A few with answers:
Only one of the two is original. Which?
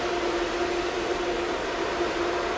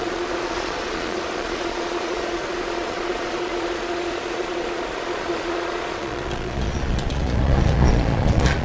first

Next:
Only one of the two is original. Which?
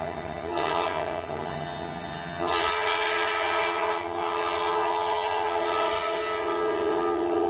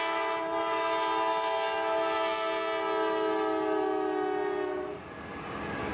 second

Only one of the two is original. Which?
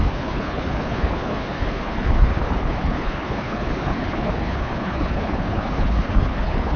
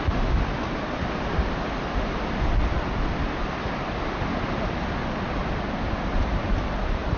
second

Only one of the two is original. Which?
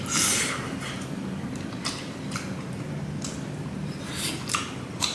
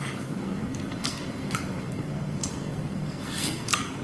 first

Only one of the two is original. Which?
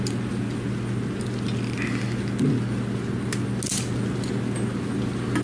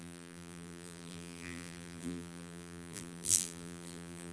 first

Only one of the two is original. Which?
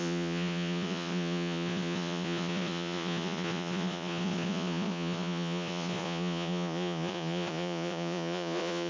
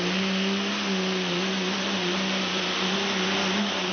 second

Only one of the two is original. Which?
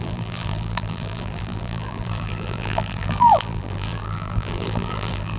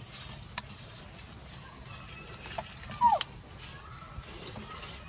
second